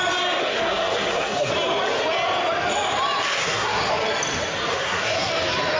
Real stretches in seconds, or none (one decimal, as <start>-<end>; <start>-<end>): 0.0-0.4; 1.5-3.4; 3.9-4.7; 5.3-5.8